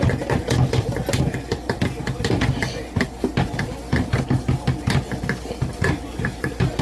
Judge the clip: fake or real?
real